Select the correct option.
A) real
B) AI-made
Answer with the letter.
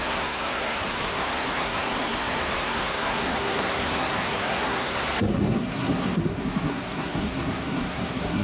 B